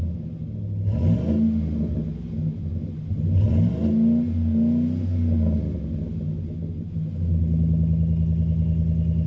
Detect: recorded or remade recorded